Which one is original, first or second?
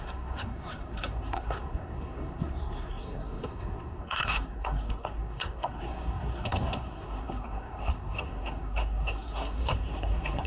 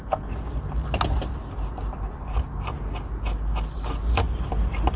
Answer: second